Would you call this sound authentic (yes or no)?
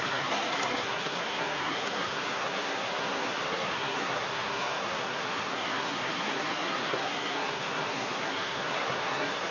no